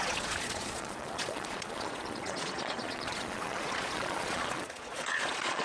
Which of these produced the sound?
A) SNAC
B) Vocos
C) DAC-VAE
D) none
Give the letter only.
B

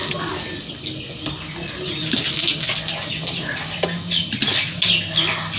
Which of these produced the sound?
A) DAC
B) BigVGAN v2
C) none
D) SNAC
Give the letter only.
C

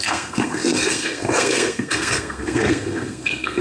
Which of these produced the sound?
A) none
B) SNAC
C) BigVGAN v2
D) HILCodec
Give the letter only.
B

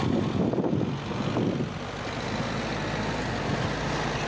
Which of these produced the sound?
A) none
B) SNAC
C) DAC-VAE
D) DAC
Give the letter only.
A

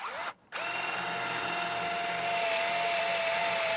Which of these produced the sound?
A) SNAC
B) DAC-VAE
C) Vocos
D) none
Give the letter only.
D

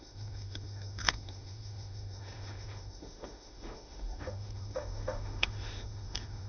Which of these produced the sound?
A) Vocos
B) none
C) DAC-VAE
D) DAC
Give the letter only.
C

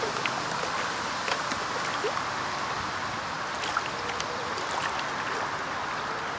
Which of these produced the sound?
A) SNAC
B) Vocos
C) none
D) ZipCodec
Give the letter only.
C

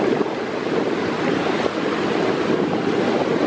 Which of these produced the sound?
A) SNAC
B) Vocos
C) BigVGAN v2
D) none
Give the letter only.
D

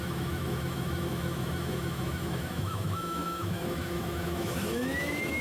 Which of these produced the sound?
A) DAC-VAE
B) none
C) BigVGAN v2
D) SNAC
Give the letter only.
A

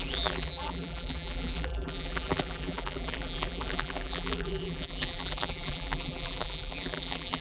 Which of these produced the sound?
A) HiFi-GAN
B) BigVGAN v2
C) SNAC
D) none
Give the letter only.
B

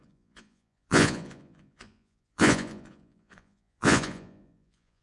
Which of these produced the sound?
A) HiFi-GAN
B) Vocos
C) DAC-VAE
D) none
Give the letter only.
B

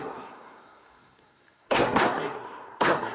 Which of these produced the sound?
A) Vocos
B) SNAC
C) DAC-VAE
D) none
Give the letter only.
B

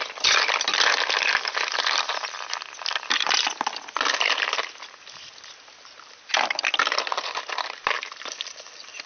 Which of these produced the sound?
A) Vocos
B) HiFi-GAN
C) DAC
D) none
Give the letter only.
D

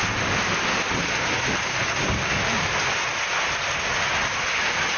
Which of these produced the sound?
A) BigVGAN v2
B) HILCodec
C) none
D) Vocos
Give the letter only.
C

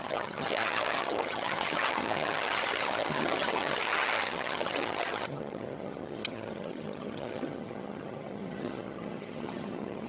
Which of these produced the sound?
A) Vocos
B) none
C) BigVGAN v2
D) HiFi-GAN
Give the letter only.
D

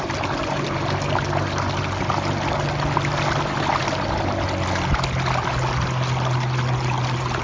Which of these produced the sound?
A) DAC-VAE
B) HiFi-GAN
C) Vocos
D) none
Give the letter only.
D